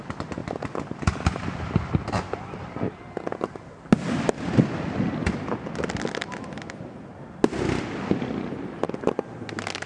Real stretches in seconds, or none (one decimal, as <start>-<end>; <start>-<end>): 0.0-9.9